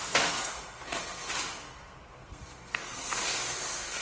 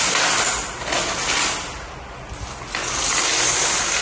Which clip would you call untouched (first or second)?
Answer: second